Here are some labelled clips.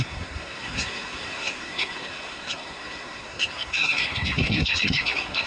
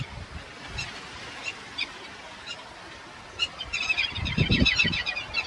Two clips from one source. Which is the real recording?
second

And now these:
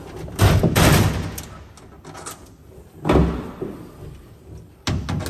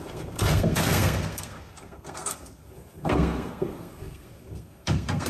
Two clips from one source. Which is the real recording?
first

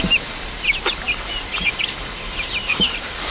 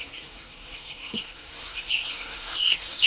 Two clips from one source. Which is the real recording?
first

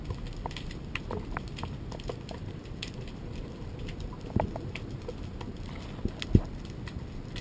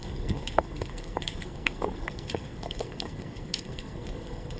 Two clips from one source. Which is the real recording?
first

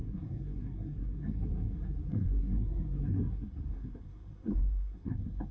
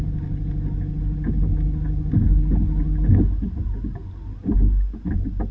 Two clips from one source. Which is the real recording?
second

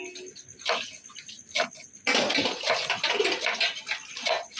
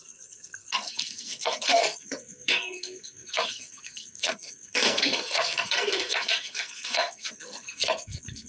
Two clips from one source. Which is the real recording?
first